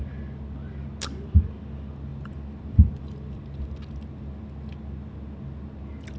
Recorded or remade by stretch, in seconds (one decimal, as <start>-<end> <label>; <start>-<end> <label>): 0.0-2.1 recorded; 2.1-3.4 remade; 3.4-6.2 recorded